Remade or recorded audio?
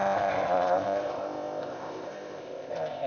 remade